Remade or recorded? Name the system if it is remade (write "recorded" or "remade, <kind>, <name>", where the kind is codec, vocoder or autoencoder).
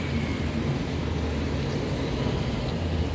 recorded